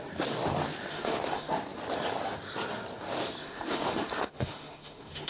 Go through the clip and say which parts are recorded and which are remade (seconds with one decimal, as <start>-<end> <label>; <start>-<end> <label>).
0.0-0.9 recorded; 0.9-1.5 remade; 1.5-3.4 recorded; 3.4-5.3 remade